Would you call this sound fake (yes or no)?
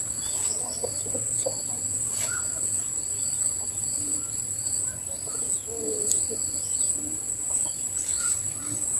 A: no